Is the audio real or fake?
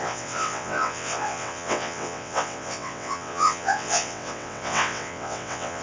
fake